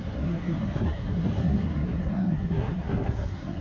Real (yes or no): no